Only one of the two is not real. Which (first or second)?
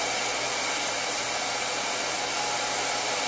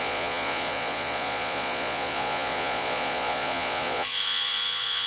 second